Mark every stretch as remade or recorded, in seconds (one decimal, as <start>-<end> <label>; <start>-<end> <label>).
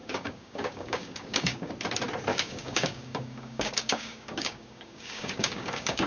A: 0.0-1.7 remade; 1.7-2.3 recorded; 2.3-6.1 remade